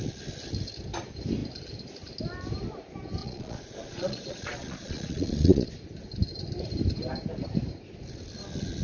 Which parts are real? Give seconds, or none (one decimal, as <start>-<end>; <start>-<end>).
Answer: 0.0-3.2; 5.7-8.8